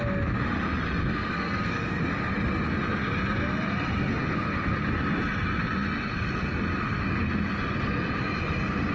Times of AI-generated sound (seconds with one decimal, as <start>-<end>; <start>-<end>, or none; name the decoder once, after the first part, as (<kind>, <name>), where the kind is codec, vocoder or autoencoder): 1.0-2.0 (codec, SNAC)